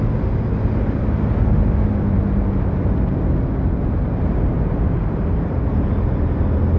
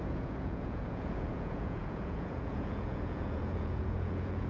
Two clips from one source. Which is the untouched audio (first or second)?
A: first